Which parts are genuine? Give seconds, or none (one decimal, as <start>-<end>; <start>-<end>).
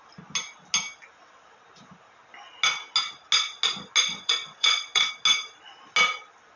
0.0-4.1; 5.1-6.6